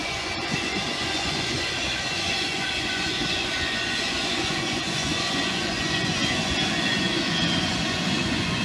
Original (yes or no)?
no